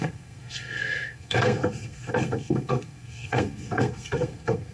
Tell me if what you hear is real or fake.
fake